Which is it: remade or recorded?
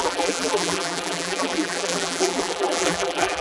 remade